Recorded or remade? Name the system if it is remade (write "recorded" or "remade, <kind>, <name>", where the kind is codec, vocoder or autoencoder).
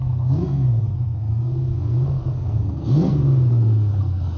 remade, codec, SNAC